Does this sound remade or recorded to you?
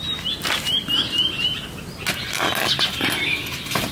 recorded